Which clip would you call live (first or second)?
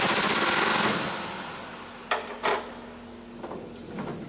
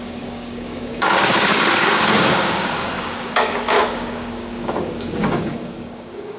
first